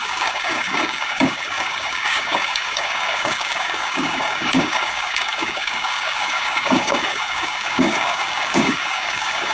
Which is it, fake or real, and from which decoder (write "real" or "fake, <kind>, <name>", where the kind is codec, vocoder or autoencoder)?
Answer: fake, codec, DAC